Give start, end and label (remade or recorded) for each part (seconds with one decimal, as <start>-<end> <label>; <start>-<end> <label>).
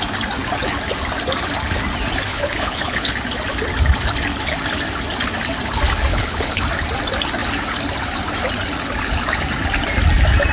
0.0-2.3 recorded; 2.3-3.1 remade; 3.1-6.1 recorded; 6.1-6.6 remade; 6.6-10.5 recorded